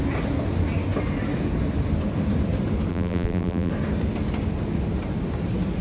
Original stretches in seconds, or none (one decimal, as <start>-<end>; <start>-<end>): 0.0-2.9; 3.7-5.8